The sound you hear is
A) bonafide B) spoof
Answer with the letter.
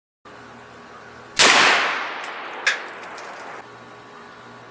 A